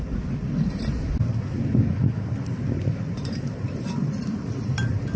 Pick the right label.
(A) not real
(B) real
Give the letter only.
B